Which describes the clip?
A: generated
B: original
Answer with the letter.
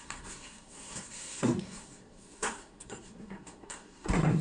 A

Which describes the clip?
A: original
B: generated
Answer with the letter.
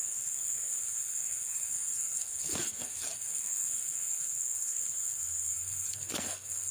B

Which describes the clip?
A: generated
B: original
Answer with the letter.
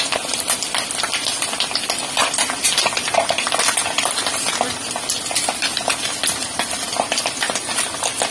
B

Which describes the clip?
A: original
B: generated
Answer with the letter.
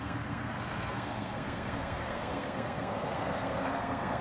B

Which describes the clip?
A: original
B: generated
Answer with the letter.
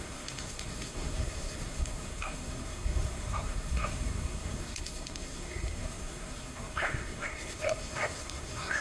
B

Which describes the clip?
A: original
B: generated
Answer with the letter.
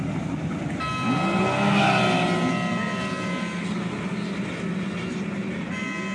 A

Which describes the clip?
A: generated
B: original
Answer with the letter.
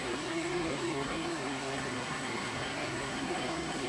A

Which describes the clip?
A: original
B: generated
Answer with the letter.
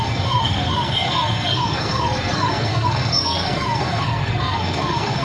B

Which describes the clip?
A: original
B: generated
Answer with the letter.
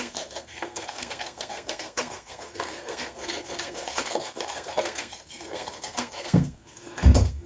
B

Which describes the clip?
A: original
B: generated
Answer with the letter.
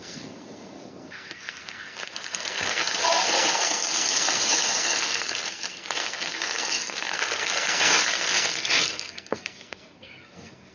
B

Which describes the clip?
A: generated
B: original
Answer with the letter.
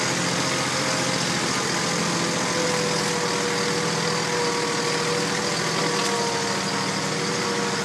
B